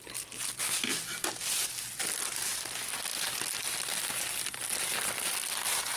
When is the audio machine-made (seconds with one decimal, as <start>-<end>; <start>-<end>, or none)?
none